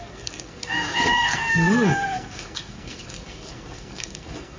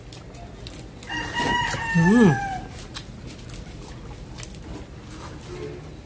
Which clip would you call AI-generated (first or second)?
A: first